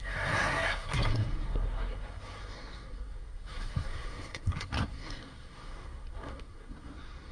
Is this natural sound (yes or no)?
no